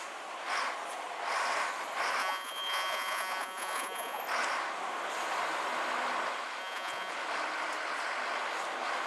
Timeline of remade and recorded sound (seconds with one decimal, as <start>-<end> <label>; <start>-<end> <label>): 0.0-2.2 recorded; 2.2-4.2 remade; 4.2-6.6 recorded; 6.6-7.1 remade; 7.1-9.1 recorded

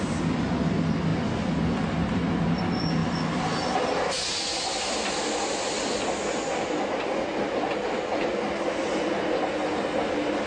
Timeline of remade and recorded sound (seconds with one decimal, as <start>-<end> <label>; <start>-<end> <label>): 0.0-10.5 recorded

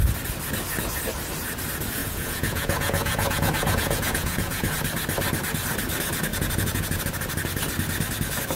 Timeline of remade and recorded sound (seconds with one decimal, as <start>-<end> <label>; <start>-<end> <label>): 0.0-2.0 recorded; 2.0-4.8 remade; 4.8-6.3 recorded; 6.3-7.0 remade; 7.0-8.6 recorded

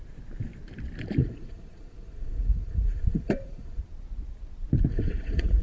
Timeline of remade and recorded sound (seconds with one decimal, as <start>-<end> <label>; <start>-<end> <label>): 0.0-1.2 recorded; 1.2-3.8 remade; 3.8-4.9 recorded; 4.9-5.6 remade